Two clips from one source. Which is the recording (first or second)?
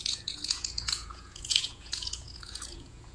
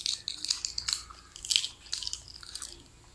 second